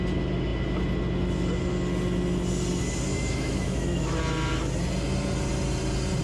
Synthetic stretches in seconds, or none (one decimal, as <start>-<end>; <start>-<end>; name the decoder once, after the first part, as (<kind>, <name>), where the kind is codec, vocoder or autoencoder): 3.1-4.2 (autoencoder, DAC-VAE)